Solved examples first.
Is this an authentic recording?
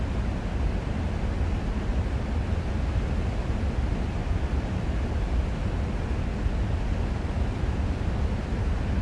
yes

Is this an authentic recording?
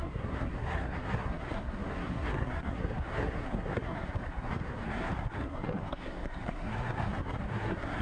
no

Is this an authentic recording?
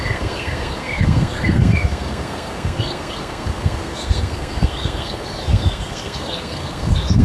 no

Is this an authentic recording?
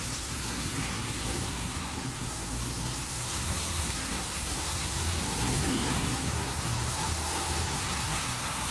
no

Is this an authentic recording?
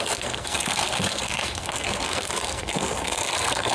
no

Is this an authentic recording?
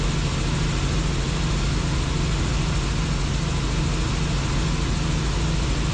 yes